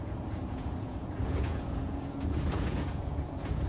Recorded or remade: remade